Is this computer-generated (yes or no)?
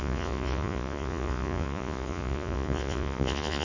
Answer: yes